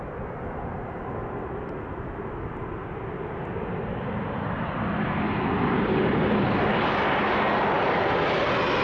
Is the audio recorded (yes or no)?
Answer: yes